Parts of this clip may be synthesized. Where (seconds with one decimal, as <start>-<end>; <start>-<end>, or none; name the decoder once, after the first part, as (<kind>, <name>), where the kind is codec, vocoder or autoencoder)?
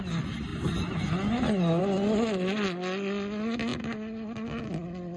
none